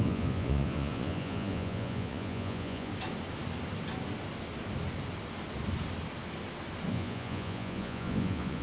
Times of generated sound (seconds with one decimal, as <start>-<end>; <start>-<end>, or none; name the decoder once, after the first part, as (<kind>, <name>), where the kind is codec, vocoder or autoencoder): 0.0-2.9 (vocoder, Vocos); 6.9-8.6

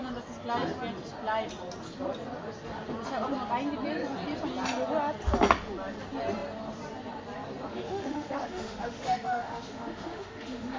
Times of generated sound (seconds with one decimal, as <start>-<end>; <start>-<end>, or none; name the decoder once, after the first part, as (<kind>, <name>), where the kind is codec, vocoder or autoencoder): 7.7-10.8 (autoencoder, DAC-VAE)

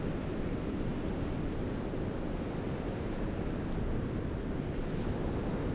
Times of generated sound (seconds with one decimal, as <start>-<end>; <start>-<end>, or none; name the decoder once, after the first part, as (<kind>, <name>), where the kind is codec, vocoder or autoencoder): none

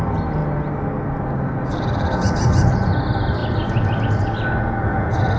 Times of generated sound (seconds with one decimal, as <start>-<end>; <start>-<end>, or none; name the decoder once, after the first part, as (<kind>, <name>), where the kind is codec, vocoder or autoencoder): 1.7-2.9 (vocoder, BigVGAN v2)

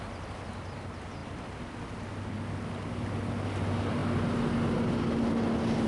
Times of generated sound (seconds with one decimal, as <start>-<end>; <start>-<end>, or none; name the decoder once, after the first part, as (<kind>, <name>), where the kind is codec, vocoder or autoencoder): none

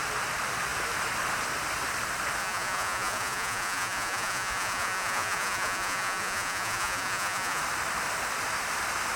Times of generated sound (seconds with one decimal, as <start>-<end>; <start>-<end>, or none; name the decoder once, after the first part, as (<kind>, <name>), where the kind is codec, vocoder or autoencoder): 2.4-7.6 (vocoder, Vocos)

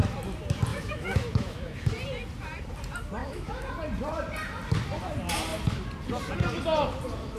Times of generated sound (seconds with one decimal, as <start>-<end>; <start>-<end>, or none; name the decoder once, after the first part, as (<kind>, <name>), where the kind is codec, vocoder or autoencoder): 0.7-1.8 (autoencoder, DAC-VAE); 3.2-3.7